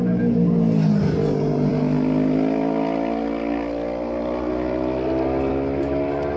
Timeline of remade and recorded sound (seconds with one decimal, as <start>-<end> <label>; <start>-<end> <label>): 0.0-6.4 recorded